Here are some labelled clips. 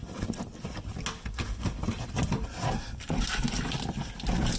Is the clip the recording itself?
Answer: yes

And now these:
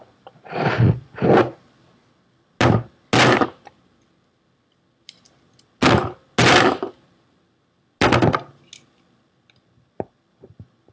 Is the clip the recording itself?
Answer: yes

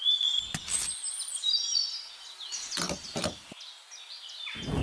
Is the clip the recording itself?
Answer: yes